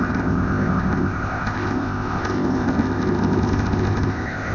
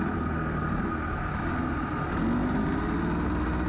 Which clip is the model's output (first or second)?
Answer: first